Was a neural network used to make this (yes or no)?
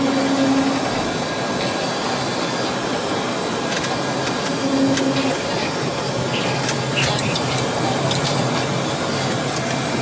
no